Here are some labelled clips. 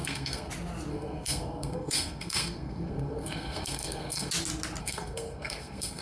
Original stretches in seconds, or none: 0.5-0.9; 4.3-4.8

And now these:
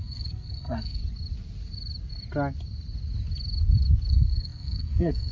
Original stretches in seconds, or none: 1.0-4.1

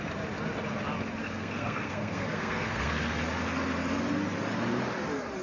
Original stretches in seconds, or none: 0.0-1.2; 2.9-5.4

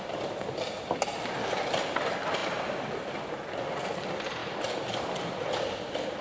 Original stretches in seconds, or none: 0.0-6.2

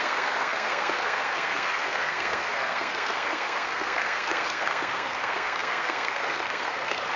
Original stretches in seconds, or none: none

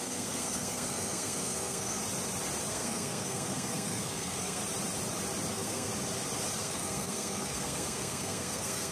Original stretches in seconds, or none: 2.0-2.7; 4.6-5.5; 5.9-6.6